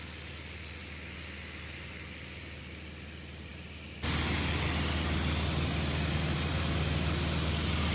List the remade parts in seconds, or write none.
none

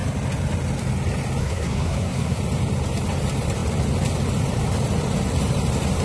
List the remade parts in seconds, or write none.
1.4-2.4 (codec, SNAC)

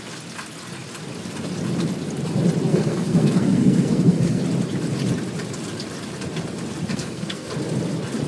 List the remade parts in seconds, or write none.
2.7-4.4 (codec, SNAC); 6.9-7.5

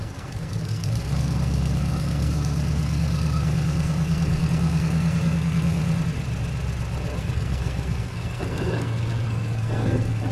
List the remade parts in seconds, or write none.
0.0-5.8 (codec, SNAC); 7.2-10.3